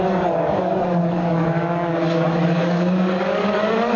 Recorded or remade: remade